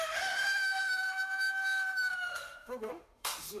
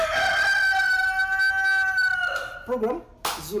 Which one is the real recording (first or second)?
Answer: second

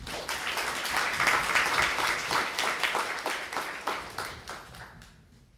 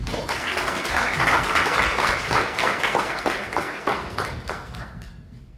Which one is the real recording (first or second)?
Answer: first